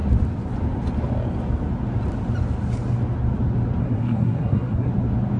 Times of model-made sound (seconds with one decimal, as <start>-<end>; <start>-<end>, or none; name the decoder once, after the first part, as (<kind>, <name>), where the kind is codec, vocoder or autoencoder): 3.8-4.9 (codec, SNAC)